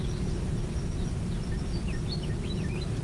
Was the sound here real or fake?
real